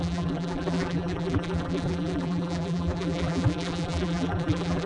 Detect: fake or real fake